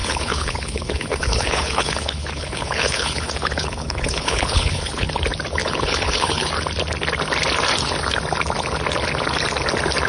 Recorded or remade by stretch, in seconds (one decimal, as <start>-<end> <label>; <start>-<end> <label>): 0.0-5.1 remade; 5.1-5.6 recorded; 5.6-6.5 remade; 6.5-10.1 recorded